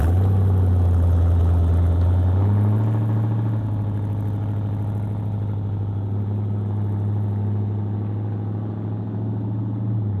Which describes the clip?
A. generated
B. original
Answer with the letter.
B